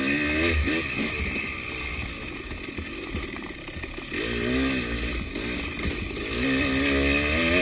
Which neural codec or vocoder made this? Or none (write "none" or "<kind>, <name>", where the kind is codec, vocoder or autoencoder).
none